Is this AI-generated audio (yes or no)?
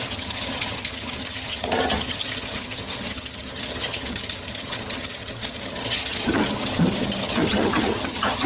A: yes